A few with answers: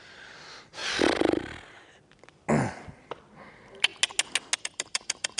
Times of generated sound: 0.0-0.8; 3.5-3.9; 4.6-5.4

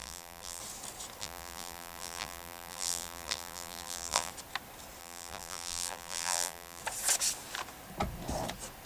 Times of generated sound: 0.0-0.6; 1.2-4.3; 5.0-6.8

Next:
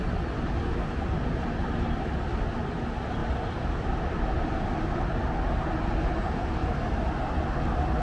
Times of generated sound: 3.2-4.2; 6.6-7.3